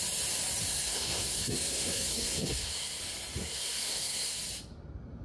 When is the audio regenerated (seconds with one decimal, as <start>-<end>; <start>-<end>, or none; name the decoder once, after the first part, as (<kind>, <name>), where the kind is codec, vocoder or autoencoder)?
0.7-3.0 (codec, SNAC); 3.4-4.4